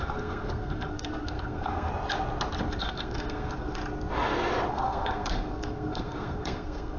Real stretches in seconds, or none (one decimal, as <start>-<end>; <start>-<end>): 1.9-2.8; 3.8-4.7